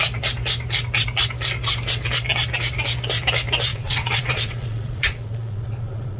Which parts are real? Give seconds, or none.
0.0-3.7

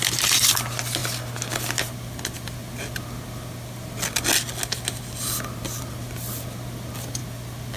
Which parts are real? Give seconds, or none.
0.0-7.8

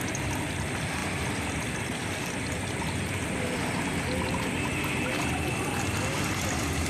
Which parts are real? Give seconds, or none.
0.0-6.9

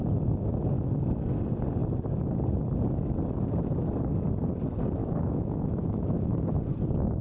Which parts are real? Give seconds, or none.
0.0-5.0; 6.6-7.2

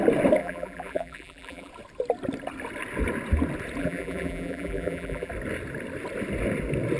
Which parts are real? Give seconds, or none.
0.0-0.4; 1.7-3.8; 5.3-7.0

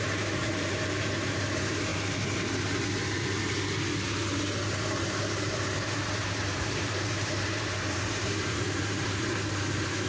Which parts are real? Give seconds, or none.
1.9-4.6

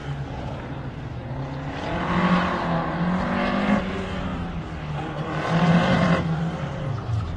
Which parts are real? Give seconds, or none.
1.1-4.3; 6.4-7.4